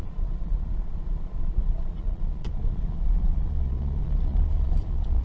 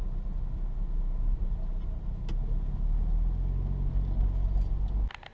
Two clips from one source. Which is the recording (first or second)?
second